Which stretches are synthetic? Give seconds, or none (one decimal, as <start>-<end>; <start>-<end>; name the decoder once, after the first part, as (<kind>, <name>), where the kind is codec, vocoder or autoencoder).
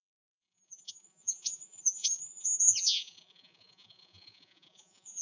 0.0-5.2 (vocoder, Vocos)